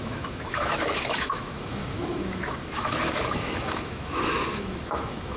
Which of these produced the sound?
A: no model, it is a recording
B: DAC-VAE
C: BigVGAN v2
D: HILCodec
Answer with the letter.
B